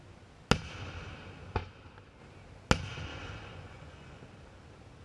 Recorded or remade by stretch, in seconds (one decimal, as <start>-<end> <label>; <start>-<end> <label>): 0.0-3.1 recorded; 3.1-4.2 remade; 4.2-5.0 recorded